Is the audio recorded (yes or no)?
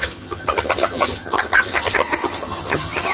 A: no